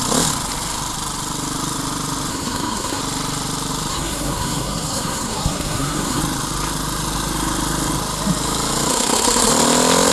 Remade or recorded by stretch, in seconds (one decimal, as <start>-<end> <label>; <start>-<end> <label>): 0.0-2.3 recorded; 2.3-3.0 remade; 3.0-3.9 recorded; 3.9-6.2 remade; 6.2-8.9 recorded; 8.9-9.5 remade; 9.5-10.1 recorded